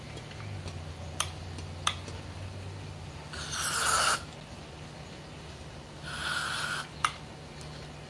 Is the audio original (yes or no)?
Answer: yes